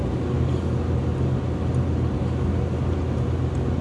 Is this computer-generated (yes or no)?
no